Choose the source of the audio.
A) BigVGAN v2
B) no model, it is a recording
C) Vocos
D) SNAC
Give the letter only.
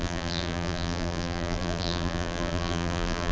A